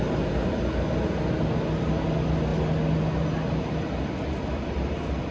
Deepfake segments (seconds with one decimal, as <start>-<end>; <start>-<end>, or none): none